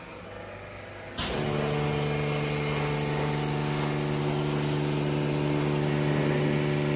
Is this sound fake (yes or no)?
no